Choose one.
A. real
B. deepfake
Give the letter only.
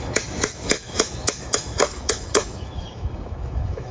B